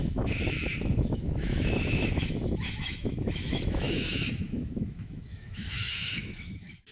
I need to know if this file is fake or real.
fake